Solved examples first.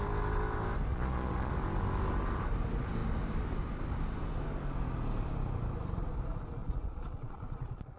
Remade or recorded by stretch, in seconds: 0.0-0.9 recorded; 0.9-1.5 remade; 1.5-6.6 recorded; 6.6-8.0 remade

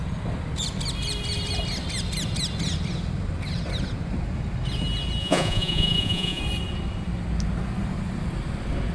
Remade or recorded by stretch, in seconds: 0.0-5.2 recorded; 5.2-6.4 remade; 6.4-8.9 recorded

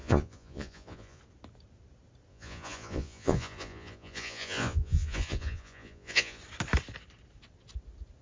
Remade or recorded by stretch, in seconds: 0.0-1.2 remade; 1.2-2.3 recorded; 2.3-6.4 remade; 6.4-8.2 recorded

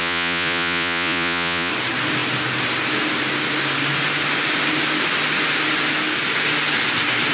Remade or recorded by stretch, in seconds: 0.0-1.7 remade; 1.7-7.3 recorded

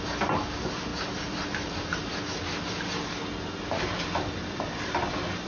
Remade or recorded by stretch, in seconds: 0.0-5.5 recorded

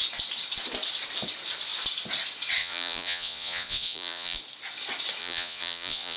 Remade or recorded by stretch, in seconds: 0.0-2.6 recorded; 2.6-4.4 remade; 4.4-5.2 recorded; 5.2-6.2 remade